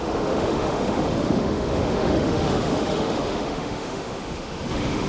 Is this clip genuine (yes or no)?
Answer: no